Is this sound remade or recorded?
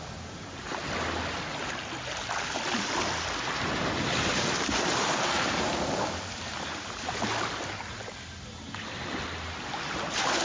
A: recorded